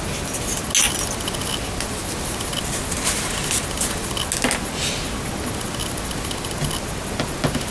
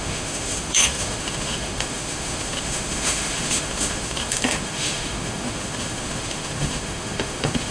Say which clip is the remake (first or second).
second